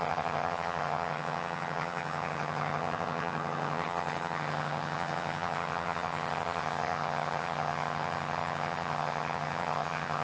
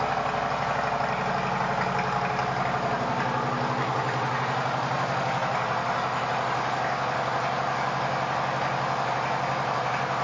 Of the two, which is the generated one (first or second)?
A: first